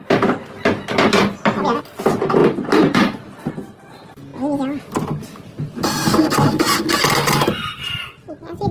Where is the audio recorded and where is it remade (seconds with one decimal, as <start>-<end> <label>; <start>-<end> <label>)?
0.0-2.4 recorded; 2.4-3.5 remade; 3.5-8.7 recorded